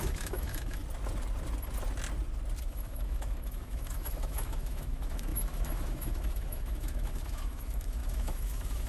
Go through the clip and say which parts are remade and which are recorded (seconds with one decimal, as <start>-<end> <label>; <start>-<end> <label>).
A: 0.0-0.8 remade; 0.8-2.6 recorded; 2.6-8.9 remade